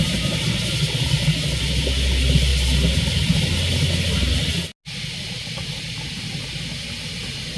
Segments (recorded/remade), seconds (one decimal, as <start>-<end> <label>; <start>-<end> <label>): 0.0-7.6 recorded